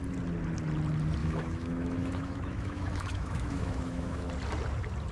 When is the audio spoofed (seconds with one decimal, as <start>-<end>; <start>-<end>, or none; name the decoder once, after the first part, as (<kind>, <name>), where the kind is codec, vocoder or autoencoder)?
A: 1.2-4.3 (autoencoder, DAC-VAE)